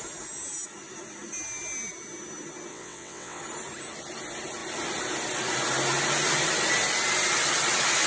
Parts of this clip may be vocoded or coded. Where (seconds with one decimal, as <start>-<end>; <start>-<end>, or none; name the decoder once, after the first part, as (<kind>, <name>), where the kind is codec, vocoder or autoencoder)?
2.7-3.4 (vocoder, WaveNeXt)